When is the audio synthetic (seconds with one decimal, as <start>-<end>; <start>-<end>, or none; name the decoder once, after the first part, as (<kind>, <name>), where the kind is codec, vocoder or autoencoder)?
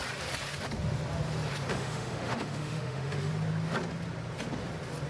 1.7-3.3 (autoencoder, DAC-VAE)